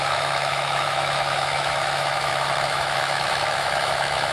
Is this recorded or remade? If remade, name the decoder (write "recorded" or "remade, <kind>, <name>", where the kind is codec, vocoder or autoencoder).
remade, autoencoder, DAC-VAE